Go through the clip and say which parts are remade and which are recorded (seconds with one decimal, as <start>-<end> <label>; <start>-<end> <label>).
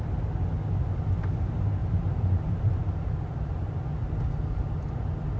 0.0-1.8 recorded; 1.8-2.7 remade; 2.7-5.4 recorded